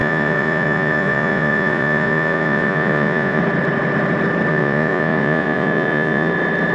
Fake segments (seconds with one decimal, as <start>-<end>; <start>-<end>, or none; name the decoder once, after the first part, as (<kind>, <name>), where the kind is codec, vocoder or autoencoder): 0.0-3.4 (vocoder, Vocos); 4.5-6.3